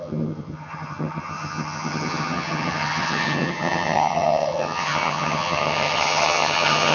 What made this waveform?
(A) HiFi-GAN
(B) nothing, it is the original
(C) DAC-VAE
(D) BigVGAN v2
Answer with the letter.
A